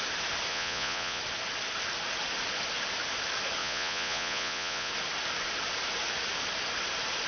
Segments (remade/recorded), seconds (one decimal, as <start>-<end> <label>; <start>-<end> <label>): 0.0-0.5 recorded; 0.5-1.2 remade; 1.2-3.6 recorded; 3.6-4.9 remade; 4.9-7.3 recorded